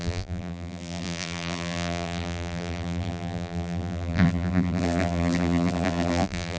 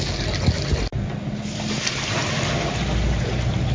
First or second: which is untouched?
second